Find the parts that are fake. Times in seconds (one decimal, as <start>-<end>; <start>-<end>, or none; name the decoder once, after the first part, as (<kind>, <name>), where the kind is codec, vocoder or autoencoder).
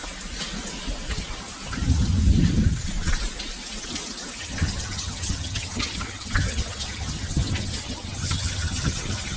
4.4-9.4 (vocoder, HiFi-GAN)